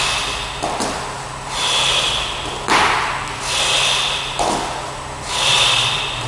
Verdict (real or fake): real